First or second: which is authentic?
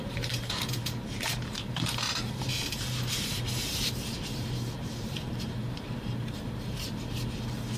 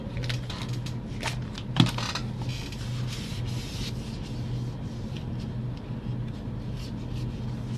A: second